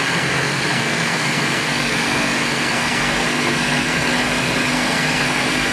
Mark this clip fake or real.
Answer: fake